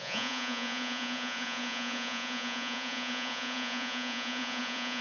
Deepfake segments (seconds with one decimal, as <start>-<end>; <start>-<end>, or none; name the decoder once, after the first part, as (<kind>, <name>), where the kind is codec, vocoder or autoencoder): 0.0-5.0 (vocoder, Vocos)